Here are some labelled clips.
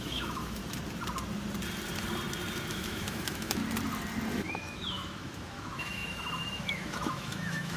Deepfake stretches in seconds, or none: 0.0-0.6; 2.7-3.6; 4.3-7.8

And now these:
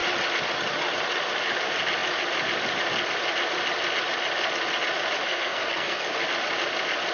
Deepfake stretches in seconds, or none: 5.2-6.1

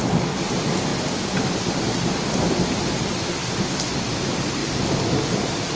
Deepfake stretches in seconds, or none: none

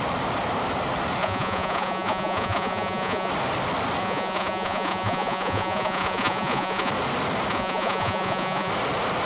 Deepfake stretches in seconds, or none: 1.2-3.3; 4.0-6.9; 7.5-8.7